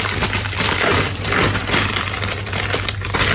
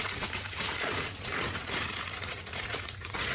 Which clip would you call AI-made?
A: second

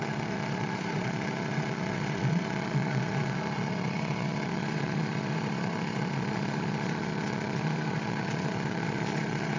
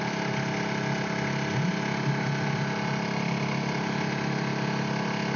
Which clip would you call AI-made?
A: first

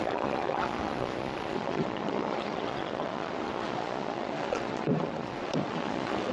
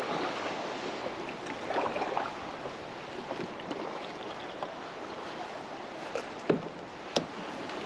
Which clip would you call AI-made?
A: first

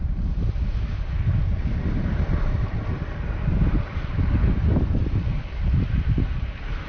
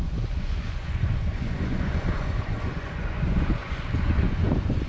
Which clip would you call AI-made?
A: second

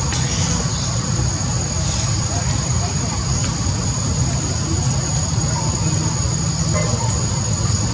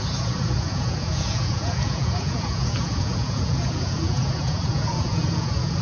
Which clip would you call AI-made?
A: second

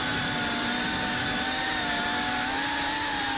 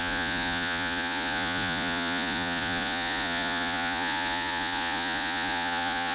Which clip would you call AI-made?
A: second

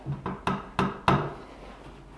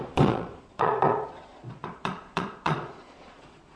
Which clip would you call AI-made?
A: second